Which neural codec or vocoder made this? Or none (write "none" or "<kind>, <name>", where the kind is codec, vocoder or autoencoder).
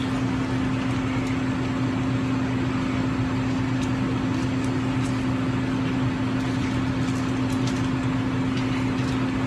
none